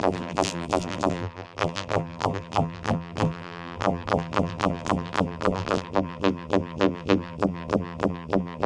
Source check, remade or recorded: remade